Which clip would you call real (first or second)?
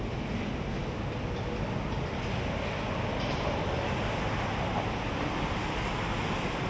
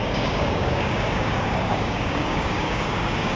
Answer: first